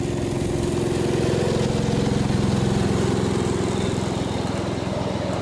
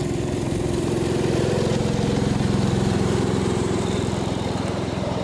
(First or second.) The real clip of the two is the first